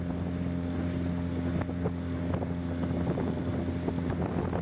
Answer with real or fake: real